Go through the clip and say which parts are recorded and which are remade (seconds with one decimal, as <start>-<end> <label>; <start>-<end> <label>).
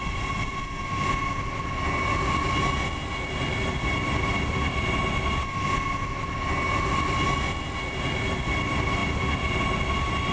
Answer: 0.0-10.3 recorded